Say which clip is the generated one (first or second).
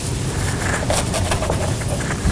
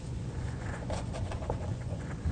second